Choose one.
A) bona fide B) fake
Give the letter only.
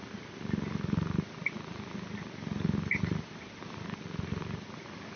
A